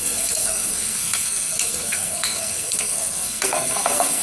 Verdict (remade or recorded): remade